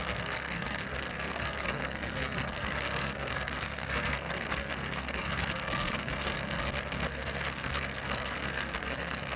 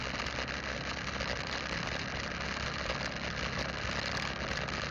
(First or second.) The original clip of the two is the second